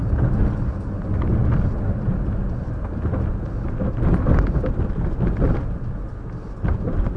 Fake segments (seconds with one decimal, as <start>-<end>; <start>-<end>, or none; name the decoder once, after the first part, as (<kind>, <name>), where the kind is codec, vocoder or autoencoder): none